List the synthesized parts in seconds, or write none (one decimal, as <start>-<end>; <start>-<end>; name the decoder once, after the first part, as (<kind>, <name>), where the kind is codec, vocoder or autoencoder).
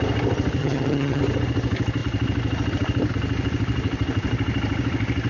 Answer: 0.6-1.2 (vocoder, HiFi-GAN)